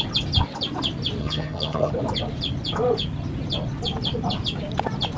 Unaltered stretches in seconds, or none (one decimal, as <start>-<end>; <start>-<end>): 0.0-1.2; 1.9-5.2